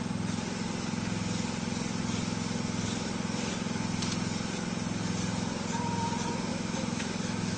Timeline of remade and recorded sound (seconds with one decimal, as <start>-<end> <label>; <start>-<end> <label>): 0.0-6.5 recorded; 6.5-7.6 remade